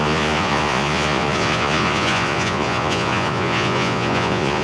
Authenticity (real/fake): fake